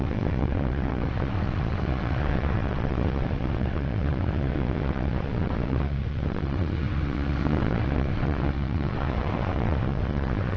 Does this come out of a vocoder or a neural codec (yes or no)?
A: yes